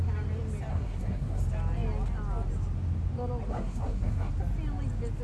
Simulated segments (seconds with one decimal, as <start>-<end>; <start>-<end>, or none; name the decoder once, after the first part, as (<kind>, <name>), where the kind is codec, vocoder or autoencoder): 0.7-1.4 (codec, SNAC); 3.5-4.3